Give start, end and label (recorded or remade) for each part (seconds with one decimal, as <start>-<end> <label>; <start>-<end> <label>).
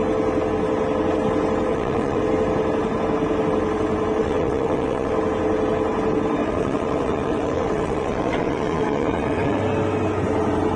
0.0-1.7 recorded; 1.7-2.2 remade; 2.2-4.2 recorded; 4.2-5.1 remade; 5.1-6.4 recorded; 6.4-9.6 remade; 9.6-10.8 recorded